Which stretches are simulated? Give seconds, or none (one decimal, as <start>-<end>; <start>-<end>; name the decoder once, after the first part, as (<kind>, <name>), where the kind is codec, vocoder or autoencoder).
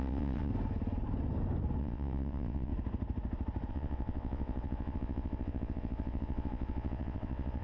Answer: 0.0-0.5 (vocoder, WaveNeXt); 1.8-2.7; 3.7-7.6